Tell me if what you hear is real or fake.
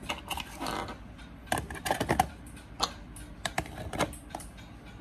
real